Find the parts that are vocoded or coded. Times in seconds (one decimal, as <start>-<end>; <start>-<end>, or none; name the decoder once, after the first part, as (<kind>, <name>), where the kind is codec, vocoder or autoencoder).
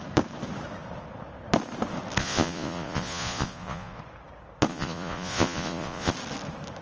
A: 2.2-4.0 (vocoder, Vocos); 4.7-6.1